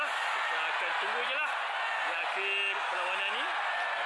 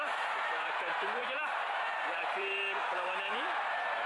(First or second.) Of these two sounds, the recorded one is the first